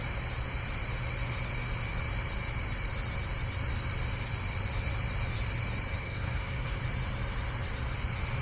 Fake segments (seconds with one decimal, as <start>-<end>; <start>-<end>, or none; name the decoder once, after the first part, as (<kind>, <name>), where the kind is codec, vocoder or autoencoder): 6.0-6.8 (codec, SNAC)

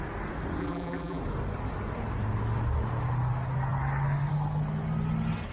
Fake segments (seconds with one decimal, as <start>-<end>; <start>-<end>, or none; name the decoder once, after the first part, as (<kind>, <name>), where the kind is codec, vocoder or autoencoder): 0.6-1.2 (vocoder, BigVGAN v2)

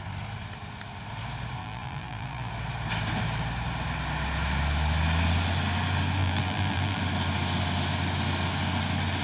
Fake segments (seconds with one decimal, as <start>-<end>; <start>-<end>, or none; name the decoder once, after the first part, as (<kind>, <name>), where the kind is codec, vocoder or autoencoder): 1.6-2.5 (vocoder, BigVGAN v2); 6.2-7.0

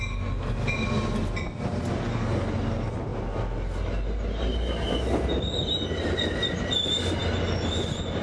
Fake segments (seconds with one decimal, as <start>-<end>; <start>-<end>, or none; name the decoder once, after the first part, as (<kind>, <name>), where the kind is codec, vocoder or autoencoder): none

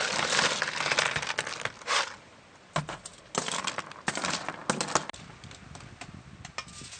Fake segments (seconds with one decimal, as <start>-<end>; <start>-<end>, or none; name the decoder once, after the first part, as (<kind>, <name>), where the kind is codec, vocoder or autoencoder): none

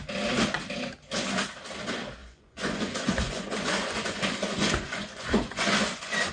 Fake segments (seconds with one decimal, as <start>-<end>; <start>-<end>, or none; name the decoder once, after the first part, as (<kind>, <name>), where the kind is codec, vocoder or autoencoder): 2.2-6.3 (vocoder, Vocos)

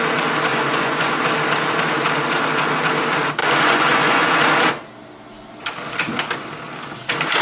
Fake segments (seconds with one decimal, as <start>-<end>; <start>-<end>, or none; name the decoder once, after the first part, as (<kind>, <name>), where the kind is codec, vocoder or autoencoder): 0.5-1.2 (vocoder, Vocos); 3.4-4.3

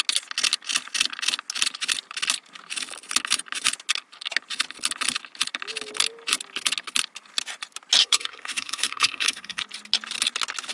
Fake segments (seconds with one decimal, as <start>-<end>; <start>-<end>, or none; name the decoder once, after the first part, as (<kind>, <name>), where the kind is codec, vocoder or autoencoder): 8.0-9.6 (codec, SNAC)